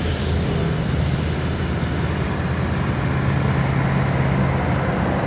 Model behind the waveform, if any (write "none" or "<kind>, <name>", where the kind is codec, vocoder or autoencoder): none